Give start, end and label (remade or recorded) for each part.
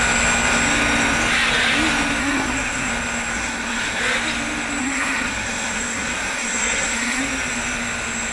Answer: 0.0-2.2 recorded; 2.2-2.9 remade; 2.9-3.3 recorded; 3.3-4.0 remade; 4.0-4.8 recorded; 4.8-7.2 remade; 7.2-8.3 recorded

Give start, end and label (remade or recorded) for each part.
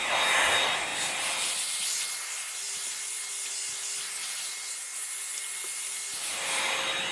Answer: 0.0-7.1 recorded